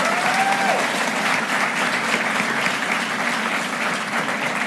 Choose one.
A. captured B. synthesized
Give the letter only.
A